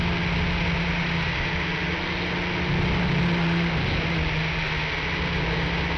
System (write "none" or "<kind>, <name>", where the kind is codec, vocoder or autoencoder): none